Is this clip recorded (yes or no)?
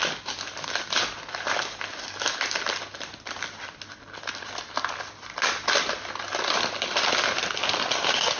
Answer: yes